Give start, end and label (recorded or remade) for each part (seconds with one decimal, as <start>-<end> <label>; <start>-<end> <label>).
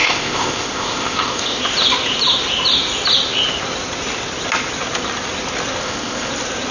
0.0-1.6 remade; 1.6-5.8 recorded; 5.8-6.3 remade; 6.3-6.7 recorded